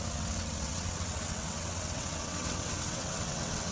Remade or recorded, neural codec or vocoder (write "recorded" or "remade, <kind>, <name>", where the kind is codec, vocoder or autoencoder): remade, vocoder, WaveNeXt